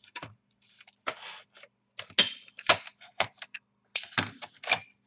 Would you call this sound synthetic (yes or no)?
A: no